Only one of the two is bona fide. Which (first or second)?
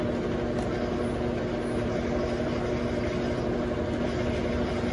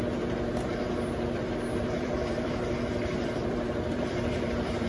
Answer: first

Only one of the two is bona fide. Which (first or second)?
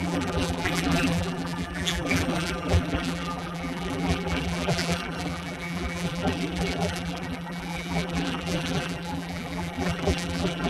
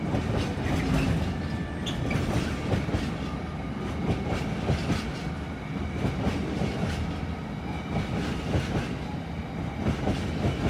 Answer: second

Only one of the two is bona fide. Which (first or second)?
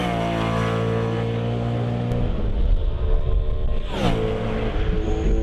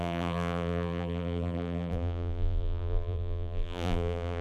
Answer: first